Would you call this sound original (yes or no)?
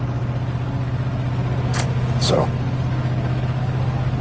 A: yes